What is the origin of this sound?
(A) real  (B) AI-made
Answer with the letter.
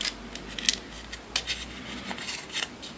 A